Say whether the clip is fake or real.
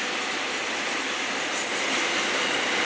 real